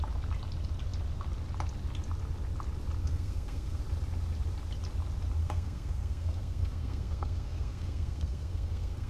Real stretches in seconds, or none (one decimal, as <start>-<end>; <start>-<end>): 0.0-3.0; 3.8-5.4